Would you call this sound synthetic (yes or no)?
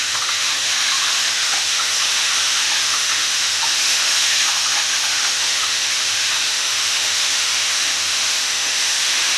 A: yes